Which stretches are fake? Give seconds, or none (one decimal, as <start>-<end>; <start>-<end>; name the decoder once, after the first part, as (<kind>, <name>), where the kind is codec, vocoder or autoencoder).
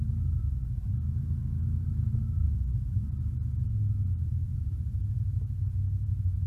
4.4-5.0 (vocoder, BigVGAN v2)